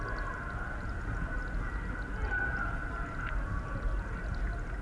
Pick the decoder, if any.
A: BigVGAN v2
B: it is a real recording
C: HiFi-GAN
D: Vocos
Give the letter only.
B